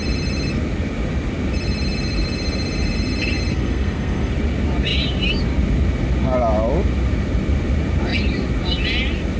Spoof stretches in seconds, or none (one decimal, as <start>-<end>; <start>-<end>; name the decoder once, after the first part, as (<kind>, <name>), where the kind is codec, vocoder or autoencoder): 3.5-4.3 (codec, SNAC)

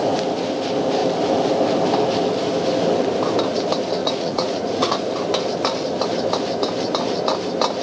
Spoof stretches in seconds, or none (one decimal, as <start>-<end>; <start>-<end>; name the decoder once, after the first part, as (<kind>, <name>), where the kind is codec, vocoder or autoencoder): 4.0-5.1 (vocoder, Vocos)

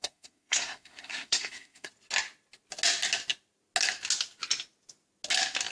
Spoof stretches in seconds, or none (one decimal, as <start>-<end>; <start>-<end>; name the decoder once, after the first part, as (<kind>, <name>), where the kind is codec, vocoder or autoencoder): 0.0-1.9 (codec, SNAC)

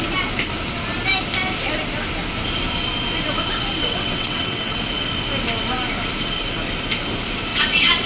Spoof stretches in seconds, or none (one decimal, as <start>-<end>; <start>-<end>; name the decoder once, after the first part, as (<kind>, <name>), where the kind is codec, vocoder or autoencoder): 3.8-4.8 (vocoder, WaveNeXt); 7.5-8.1

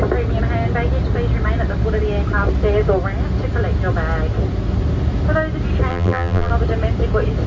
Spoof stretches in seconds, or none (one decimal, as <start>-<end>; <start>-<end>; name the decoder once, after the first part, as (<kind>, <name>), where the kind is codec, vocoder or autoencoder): 5.9-6.5 (vocoder, BigVGAN v2)

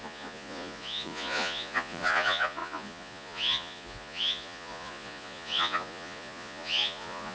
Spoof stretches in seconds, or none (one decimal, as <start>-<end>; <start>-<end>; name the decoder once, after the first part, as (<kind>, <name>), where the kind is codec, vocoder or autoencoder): 0.0-7.3 (vocoder, Vocos)

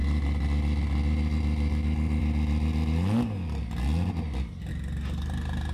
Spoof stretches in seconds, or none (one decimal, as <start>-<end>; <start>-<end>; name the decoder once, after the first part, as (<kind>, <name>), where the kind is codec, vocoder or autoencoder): none

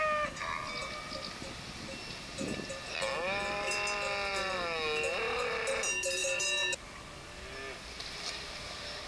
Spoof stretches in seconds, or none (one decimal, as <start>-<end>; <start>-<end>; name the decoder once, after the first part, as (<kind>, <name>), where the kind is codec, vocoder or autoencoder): none